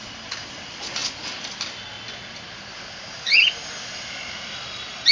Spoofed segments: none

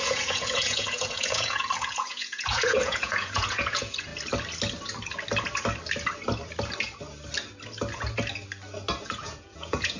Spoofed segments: 0.0-4.1 (vocoder, Vocos); 9.0-10.0

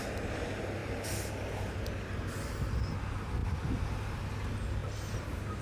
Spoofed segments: none

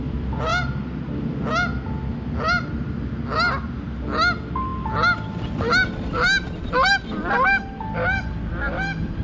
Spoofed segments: none

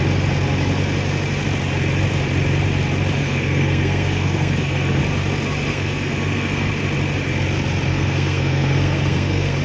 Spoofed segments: 3.2-5.0 (codec, SNAC); 5.7-6.7; 7.9-9.6